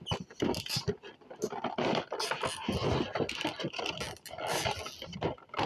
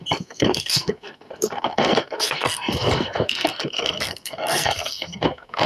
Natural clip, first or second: first